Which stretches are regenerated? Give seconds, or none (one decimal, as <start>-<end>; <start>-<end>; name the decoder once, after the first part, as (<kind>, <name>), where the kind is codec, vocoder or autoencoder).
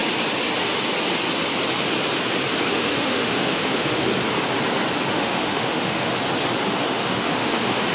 2.7-4.1 (autoencoder, DAC-VAE); 5.1-6.1; 6.8-7.9